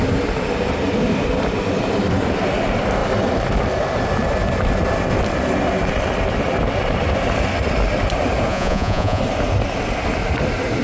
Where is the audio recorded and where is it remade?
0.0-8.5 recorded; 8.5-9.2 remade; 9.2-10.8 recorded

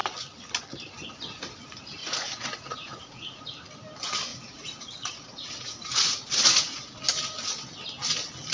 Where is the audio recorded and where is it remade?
0.0-2.0 recorded; 2.0-3.4 remade; 3.4-4.3 recorded; 4.3-7.0 remade; 7.0-8.5 recorded

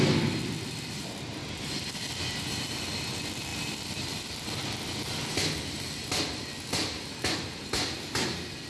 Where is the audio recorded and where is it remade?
0.0-8.7 recorded

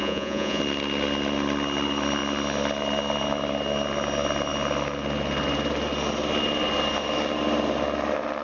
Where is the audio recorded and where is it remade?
0.0-0.6 remade; 0.6-8.4 recorded

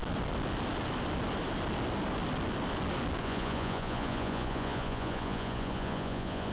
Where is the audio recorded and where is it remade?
0.0-3.2 recorded; 3.2-6.5 remade

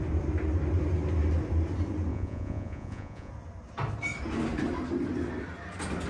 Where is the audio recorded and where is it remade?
0.0-2.1 recorded; 2.1-3.3 remade; 3.3-6.1 recorded

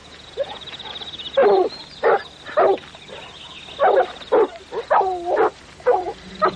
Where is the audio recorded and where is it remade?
0.0-0.9 remade; 0.9-6.6 recorded